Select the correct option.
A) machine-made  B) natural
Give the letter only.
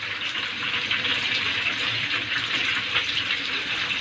A